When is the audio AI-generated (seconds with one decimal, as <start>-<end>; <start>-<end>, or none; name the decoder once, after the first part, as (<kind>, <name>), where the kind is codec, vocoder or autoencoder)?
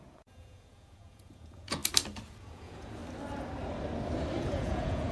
0.0-1.8 (vocoder, Vocos); 2.4-3.0; 4.4-5.1